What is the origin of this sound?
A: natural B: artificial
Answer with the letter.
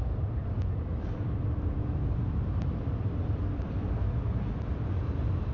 B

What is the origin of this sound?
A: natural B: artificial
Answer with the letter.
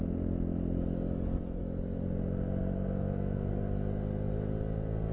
A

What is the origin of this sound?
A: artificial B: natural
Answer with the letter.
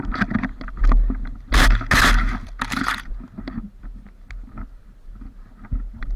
B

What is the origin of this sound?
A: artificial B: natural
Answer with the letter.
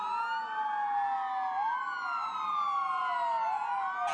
B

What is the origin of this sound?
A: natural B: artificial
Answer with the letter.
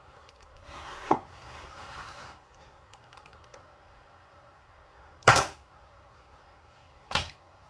B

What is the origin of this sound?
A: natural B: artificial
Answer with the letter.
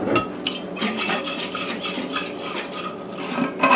A